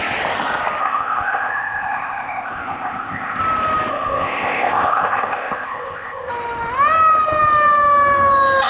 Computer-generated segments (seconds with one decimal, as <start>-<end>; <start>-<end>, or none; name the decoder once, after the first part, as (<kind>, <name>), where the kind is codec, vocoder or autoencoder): 0.8-3.4 (codec, ZipCodec); 3.9-6.3